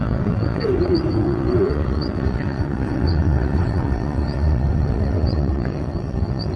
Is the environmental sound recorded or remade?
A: remade